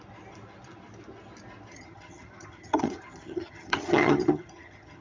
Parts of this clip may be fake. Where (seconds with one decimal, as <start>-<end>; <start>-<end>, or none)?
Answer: 1.7-5.0